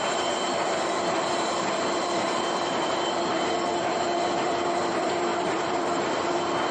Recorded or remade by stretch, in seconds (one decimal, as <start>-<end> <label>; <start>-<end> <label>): 0.0-5.3 recorded; 5.3-6.2 remade; 6.2-6.7 recorded